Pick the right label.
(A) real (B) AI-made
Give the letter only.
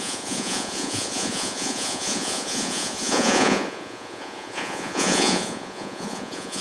B